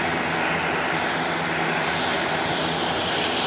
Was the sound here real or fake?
real